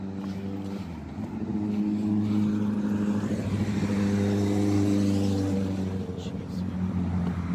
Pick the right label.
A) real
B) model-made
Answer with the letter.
A